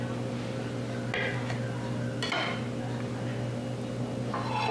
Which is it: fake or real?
real